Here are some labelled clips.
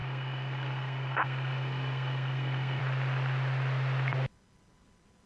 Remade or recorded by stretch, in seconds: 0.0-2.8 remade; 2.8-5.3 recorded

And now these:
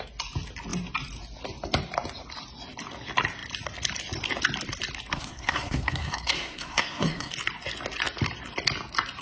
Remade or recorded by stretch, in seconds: 0.0-5.1 recorded; 5.1-7.3 remade; 7.3-9.2 recorded

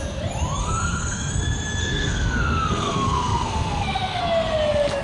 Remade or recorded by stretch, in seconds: 0.0-0.6 recorded; 0.6-1.3 remade; 1.3-1.8 recorded; 1.8-4.2 remade; 4.2-5.0 recorded

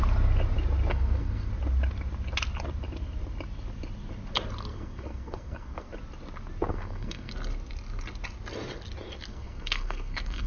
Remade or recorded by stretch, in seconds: 0.0-0.9 recorded; 0.9-1.5 remade; 1.5-4.7 recorded; 4.7-5.9 remade; 5.9-6.7 recorded; 6.7-7.3 remade; 7.3-9.3 recorded; 9.3-10.5 remade